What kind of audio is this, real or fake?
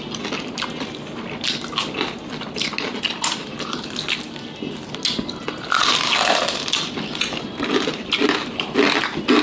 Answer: real